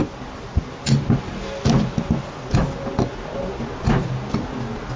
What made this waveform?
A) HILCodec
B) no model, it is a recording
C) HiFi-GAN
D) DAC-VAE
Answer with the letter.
B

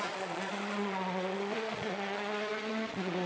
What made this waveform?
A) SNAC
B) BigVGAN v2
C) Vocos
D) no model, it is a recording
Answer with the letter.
C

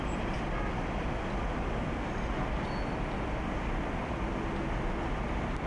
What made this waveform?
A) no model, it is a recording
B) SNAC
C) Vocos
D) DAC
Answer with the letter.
A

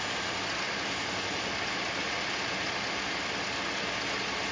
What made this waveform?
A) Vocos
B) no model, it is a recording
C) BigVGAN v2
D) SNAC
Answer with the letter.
B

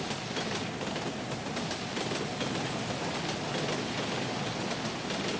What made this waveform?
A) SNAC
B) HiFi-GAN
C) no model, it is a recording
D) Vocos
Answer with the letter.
C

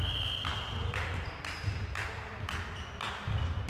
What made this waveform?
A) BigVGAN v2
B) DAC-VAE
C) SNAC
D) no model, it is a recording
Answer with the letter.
D